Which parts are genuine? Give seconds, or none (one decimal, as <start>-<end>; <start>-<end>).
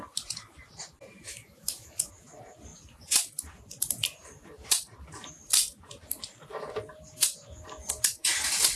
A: 0.0-1.3; 2.1-8.8